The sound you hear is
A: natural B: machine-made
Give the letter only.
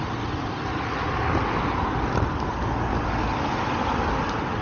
A